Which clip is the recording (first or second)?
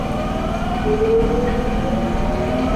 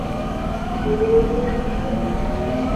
first